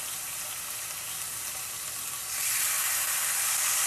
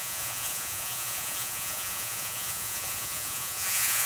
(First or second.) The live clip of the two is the first